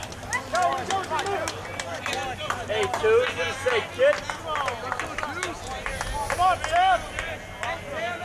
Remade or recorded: recorded